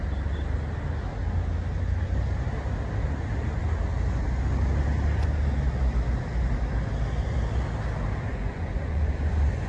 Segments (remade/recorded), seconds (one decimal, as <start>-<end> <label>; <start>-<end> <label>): 0.0-8.3 recorded; 8.3-9.7 remade